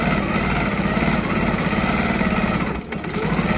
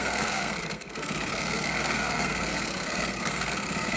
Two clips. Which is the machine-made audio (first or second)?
second